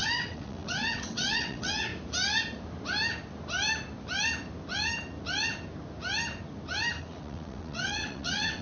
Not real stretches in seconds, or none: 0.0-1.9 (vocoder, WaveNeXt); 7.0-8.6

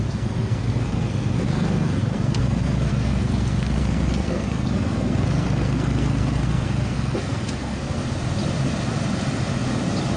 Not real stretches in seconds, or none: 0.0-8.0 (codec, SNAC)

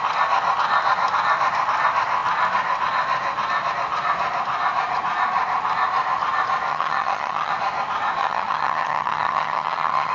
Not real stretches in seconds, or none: 6.7-7.5 (vocoder, HiFi-GAN); 8.2-10.1

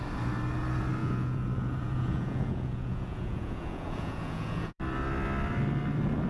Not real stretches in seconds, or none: 1.0-4.8 (vocoder, Vocos)

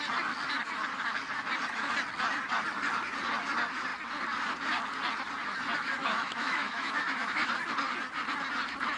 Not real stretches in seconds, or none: 6.0-7.5 (autoencoder, DAC-VAE)

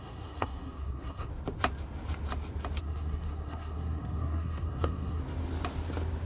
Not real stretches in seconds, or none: 0.0-1.3 (codec, SNAC); 2.8-5.2

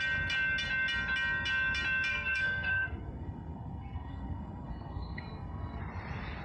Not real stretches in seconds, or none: 2.1-5.8 (codec, SNAC)